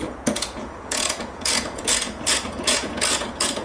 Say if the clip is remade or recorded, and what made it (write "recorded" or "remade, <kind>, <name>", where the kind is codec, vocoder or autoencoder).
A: remade, vocoder, Vocos